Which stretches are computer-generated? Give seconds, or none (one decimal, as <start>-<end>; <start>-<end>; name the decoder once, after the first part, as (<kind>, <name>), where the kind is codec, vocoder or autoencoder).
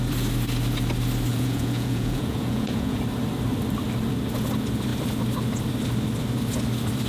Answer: 1.3-3.0 (vocoder, Vocos)